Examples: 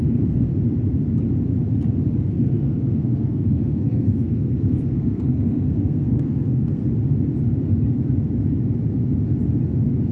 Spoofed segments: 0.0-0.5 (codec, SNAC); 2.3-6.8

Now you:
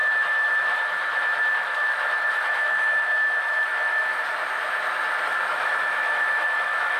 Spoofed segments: 0.0-4.2 (autoencoder, DAC-VAE); 5.5-7.0

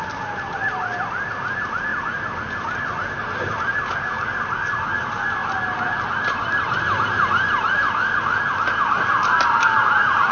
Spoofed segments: none

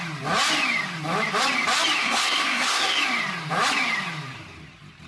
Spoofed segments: 2.0-3.0 (codec, SNAC)

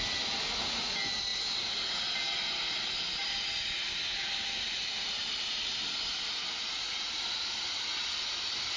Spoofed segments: none

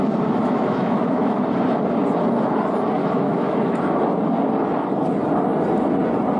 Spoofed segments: 0.4-1.4 (autoencoder, DAC-VAE); 3.0-3.8

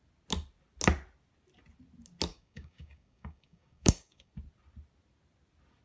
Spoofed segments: 2.3-4.3 (codec, DAC)